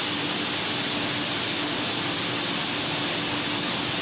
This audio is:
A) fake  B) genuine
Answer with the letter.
B